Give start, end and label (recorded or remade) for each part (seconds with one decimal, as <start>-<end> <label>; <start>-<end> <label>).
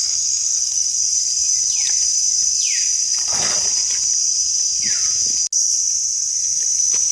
0.0-1.0 remade; 1.0-7.1 recorded